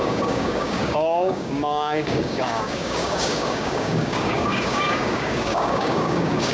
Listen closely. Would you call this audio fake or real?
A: fake